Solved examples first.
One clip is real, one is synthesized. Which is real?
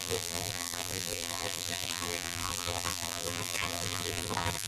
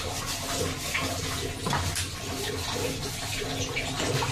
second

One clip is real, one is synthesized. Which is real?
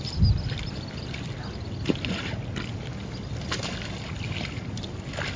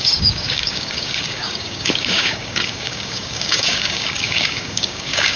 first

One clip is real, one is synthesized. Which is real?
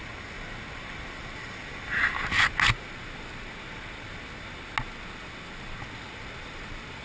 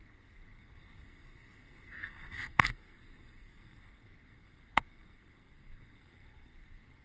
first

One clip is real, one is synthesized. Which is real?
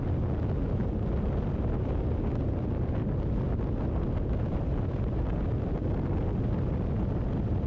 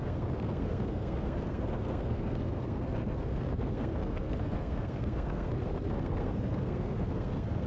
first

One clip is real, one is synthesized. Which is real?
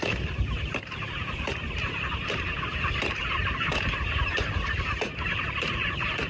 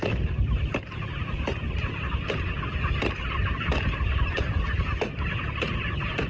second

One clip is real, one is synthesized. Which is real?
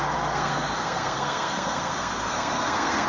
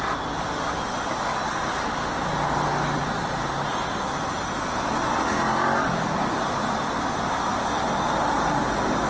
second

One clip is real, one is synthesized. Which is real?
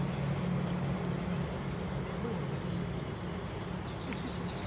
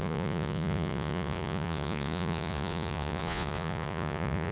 first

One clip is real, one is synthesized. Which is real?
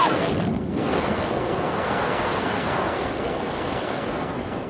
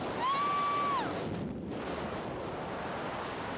second